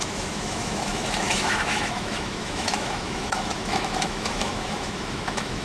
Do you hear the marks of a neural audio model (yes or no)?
yes